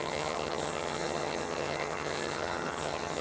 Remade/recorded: remade